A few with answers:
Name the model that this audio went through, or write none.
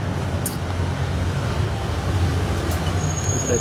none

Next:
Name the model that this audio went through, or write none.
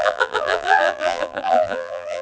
vocoder, BigVGAN v2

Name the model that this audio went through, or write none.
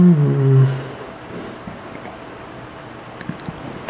none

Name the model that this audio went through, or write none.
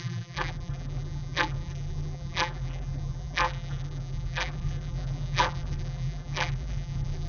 vocoder, BigVGAN v2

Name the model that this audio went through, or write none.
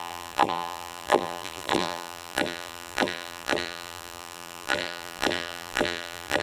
vocoder, BigVGAN v2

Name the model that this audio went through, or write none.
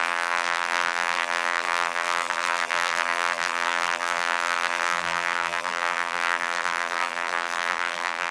vocoder, BigVGAN v2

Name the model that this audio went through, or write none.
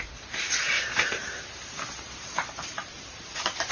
vocoder, BigVGAN v2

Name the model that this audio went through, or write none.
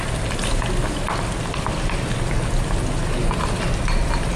none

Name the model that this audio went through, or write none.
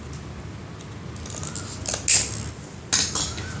none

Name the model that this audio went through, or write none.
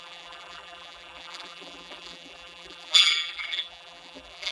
vocoder, BigVGAN v2